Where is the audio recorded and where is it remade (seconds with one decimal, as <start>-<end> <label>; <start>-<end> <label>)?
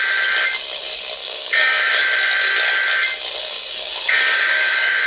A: 0.0-1.2 recorded; 1.2-2.0 remade; 2.0-3.5 recorded; 3.5-5.1 remade